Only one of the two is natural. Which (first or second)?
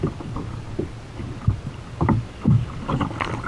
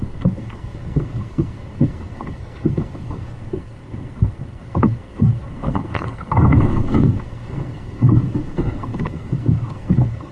first